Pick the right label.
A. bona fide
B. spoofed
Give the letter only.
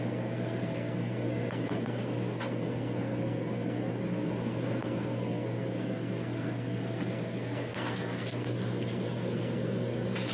B